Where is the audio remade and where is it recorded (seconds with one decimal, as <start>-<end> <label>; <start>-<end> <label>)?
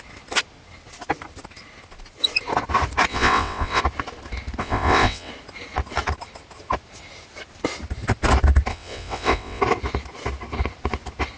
0.0-3.1 recorded; 3.1-3.8 remade; 3.8-4.6 recorded; 4.6-5.3 remade; 5.3-8.7 recorded; 8.7-9.6 remade; 9.6-11.4 recorded